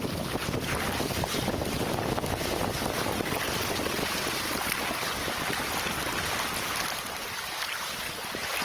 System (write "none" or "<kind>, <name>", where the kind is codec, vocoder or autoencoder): none